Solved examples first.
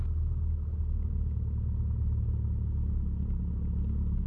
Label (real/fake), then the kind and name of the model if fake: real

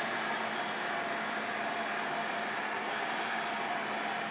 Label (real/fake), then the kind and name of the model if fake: real